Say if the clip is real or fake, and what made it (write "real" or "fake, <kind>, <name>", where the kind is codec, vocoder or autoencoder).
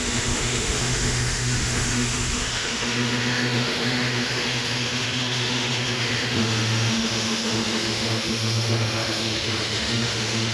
fake, autoencoder, DAC-VAE